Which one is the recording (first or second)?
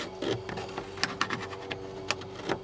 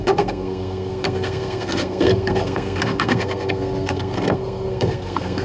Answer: first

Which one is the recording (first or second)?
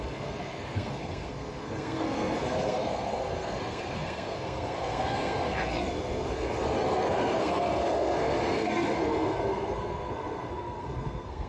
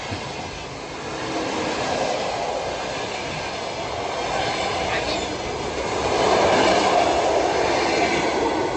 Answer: second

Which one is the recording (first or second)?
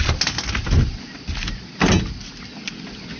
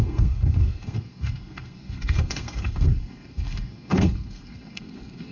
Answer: first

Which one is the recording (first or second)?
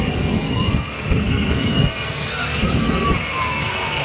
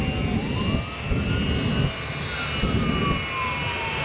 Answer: second